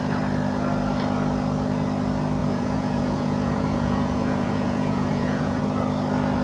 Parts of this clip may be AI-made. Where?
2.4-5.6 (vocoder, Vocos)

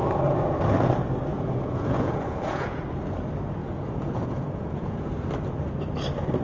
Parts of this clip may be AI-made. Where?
1.3-2.9 (vocoder, Vocos); 3.6-5.1

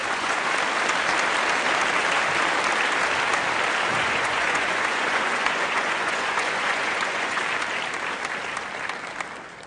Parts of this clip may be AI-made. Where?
0.0-0.5 (vocoder, Vocos); 3.9-7.4

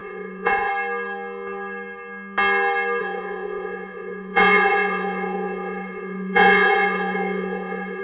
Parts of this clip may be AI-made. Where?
0.0-0.7 (vocoder, Vocos); 3.0-8.0

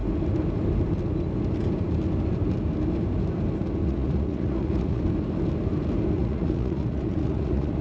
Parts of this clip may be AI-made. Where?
3.8-5.0 (vocoder, Vocos); 6.2-7.8

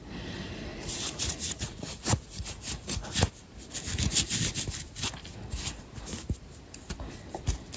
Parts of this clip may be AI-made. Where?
0.7-3.3 (vocoder, Vocos)

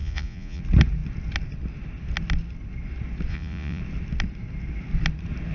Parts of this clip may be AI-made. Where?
0.0-0.6 (vocoder, Vocos); 3.3-3.8